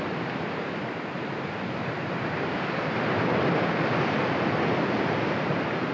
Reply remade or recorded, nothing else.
remade